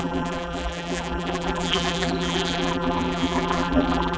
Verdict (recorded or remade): remade